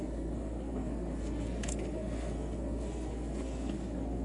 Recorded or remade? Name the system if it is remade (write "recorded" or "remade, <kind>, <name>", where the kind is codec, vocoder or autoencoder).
remade, codec, SNAC